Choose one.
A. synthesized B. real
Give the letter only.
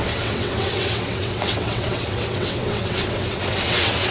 A